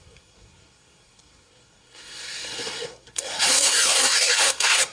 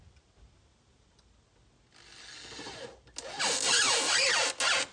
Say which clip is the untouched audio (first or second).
second